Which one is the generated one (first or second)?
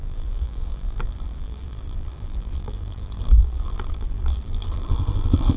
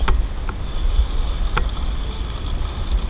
first